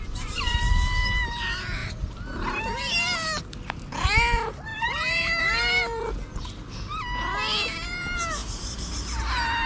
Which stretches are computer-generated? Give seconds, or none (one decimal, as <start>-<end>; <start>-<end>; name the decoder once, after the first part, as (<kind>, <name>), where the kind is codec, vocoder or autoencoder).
none